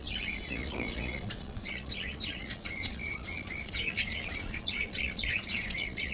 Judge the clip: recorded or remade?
remade